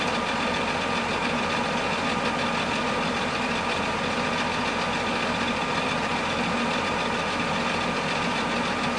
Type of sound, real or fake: real